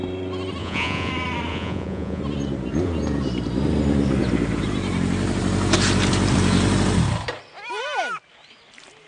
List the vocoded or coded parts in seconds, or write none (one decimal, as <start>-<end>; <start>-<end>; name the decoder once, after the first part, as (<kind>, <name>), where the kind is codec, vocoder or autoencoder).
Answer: 0.6-1.1 (vocoder, Vocos); 1.5-2.2